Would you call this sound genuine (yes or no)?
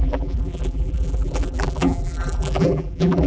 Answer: no